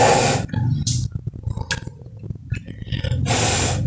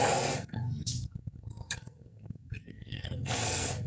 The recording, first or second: first